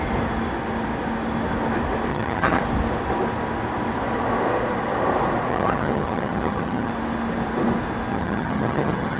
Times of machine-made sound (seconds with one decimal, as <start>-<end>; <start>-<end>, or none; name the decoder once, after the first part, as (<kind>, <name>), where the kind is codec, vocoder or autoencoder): 2.1-2.6 (vocoder, HiFi-GAN); 5.5-6.9; 8.1-9.2